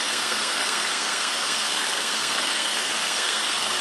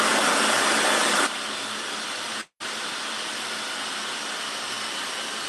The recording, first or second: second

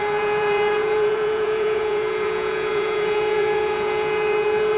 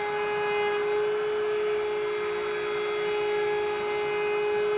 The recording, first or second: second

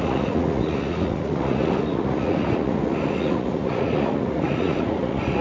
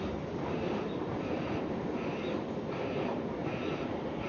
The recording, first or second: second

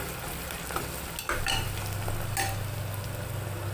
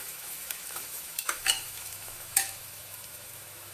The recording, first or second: first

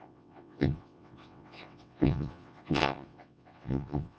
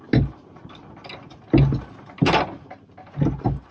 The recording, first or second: second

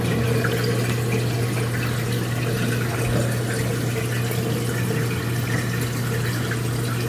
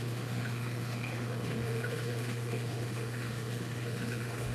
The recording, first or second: first